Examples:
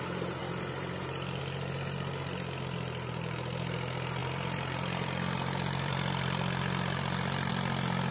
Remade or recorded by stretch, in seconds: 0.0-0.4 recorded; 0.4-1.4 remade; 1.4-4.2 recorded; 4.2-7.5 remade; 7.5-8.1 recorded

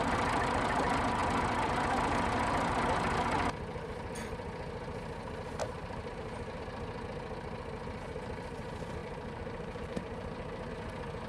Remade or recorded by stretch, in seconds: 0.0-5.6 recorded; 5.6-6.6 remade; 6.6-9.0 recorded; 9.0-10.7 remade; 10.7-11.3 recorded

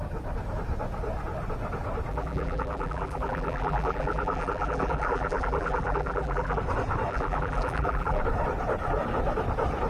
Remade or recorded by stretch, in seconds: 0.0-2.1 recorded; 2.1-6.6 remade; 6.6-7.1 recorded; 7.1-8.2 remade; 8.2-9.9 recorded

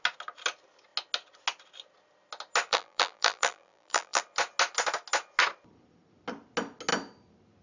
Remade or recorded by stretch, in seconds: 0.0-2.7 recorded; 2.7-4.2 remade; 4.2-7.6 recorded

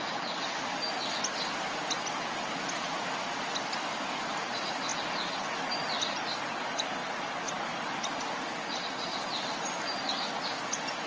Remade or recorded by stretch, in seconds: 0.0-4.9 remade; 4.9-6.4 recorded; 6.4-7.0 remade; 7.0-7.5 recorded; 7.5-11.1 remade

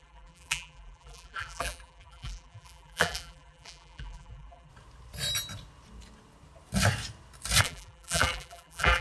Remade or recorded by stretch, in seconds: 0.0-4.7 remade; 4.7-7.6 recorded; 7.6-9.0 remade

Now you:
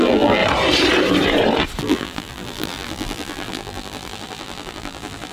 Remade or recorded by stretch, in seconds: 0.0-0.4 remade; 0.4-1.8 recorded; 1.8-5.3 remade